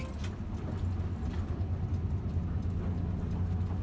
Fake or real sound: real